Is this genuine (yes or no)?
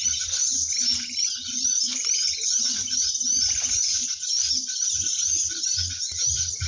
yes